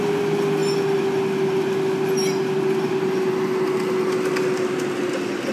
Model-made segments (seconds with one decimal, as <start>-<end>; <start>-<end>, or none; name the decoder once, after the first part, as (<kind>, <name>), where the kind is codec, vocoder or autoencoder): none